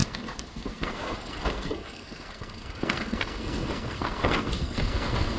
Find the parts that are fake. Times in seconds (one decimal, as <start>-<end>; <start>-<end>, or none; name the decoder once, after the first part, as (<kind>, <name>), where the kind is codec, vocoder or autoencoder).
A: 0.0-5.4 (codec, SNAC)

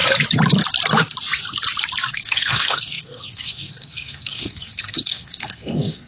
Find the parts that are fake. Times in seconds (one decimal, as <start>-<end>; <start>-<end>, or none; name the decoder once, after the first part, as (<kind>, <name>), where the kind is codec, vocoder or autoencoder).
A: 2.1-6.1 (codec, SNAC)

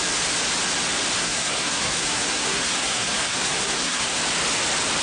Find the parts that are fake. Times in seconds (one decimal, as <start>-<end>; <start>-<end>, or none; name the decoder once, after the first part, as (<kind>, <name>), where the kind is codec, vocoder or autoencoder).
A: 1.2-4.2 (codec, SNAC)

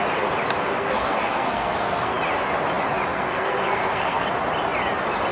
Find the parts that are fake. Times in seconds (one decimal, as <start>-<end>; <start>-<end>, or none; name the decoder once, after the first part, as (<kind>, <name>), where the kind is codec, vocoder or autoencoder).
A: 0.6-2.1 (codec, SNAC); 3.1-4.3

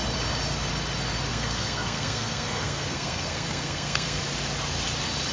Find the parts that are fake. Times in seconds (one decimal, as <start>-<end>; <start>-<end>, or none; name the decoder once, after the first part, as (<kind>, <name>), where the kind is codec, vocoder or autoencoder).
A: 1.3-4.2 (codec, SNAC)

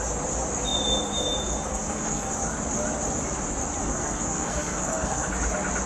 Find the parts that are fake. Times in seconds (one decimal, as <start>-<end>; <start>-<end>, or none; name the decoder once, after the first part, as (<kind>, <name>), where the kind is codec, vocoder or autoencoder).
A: 1.7-2.3 (codec, SNAC); 3.8-5.3